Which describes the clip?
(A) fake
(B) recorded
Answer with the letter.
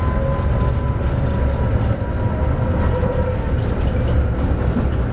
B